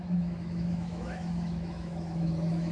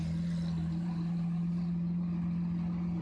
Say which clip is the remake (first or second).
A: first